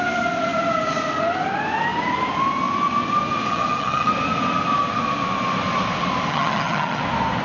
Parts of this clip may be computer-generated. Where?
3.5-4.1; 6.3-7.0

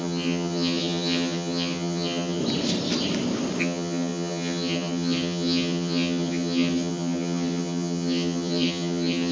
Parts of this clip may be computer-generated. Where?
0.0-2.4; 3.6-9.3